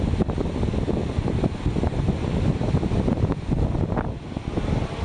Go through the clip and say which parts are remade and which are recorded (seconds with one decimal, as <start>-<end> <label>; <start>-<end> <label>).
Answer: 0.0-5.0 recorded